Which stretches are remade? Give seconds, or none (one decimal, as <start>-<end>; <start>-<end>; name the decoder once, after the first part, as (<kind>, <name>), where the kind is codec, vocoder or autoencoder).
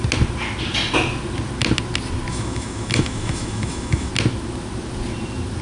2.3-4.1 (autoencoder, DAC-VAE)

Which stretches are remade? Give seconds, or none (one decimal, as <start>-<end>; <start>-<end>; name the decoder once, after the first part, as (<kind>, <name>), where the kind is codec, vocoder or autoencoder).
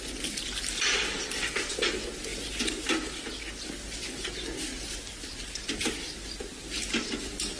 none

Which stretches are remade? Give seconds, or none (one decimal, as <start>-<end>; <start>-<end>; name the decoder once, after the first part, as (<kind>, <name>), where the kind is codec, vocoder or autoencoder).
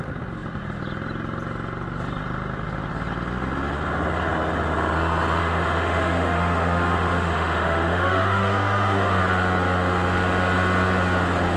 5.4-9.2 (autoencoder, DAC-VAE)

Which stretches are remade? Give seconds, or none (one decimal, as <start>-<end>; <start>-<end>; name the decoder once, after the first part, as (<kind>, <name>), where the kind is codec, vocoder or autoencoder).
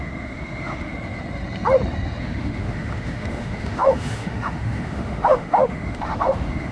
0.0-0.9 (autoencoder, DAC-VAE); 2.2-6.7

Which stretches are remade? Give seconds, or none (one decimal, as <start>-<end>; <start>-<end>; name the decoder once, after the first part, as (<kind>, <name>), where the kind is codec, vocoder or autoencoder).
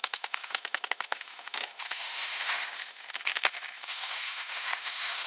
0.0-5.3 (autoencoder, DAC-VAE)